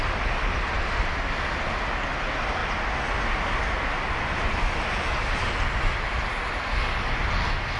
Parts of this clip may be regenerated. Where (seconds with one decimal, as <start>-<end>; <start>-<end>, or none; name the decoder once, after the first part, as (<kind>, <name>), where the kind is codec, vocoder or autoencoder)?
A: none